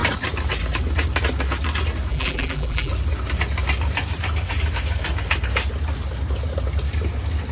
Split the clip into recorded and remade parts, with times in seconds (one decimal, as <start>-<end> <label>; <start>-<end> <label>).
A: 0.0-2.1 recorded; 2.1-2.9 remade; 2.9-7.5 recorded